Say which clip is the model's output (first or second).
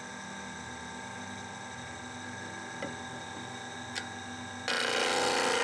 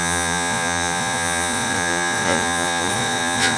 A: second